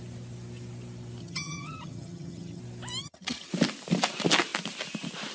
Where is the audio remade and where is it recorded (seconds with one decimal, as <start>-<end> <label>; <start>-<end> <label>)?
0.0-1.2 recorded; 1.2-2.6 remade; 2.6-3.0 recorded; 3.0-3.5 remade; 3.5-5.3 recorded